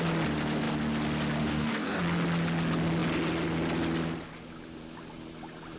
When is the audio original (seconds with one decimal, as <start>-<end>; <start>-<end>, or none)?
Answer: 0.0-1.4; 2.0-5.8